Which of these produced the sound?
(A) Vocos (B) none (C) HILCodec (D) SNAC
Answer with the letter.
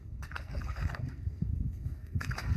D